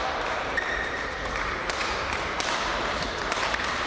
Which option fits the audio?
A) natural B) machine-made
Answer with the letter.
B